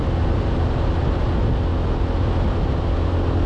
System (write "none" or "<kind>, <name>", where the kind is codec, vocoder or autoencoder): none